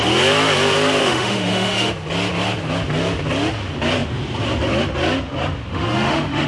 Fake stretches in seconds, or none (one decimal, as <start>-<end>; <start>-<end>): 1.0-1.9; 5.7-6.5